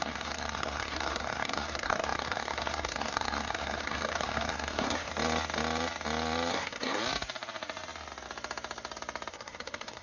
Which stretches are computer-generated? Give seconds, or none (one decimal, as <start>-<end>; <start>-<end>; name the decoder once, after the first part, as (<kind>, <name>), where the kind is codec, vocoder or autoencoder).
0.0-5.1 (codec, SNAC); 6.5-7.0; 9.3-10.0